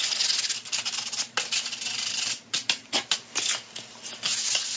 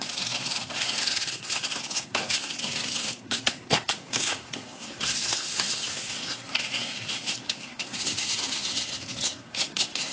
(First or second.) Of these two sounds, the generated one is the second